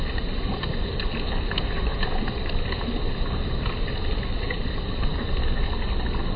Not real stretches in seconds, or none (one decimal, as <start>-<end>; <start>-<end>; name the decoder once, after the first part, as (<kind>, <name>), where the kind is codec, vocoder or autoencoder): none